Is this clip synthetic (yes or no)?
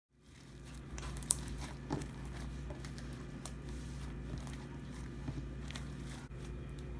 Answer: yes